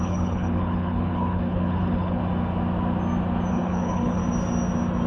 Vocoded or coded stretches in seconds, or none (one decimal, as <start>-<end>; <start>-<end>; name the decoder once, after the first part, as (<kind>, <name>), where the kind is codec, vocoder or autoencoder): 0.0-2.2 (codec, HILCodec); 3.5-4.2